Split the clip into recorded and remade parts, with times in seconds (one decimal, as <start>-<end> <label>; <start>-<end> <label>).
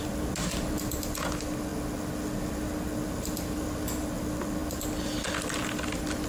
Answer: 0.0-6.3 recorded